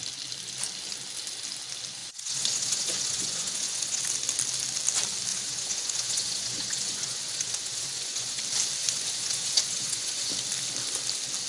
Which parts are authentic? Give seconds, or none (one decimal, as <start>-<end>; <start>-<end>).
0.0-2.0; 4.0-5.3; 8.4-8.8; 10.3-11.5